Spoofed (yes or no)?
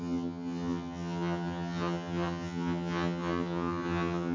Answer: yes